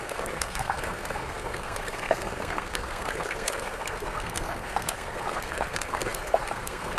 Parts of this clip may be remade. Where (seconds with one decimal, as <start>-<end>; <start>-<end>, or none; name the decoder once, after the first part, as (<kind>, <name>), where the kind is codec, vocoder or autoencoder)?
0.0-7.0 (codec, SNAC)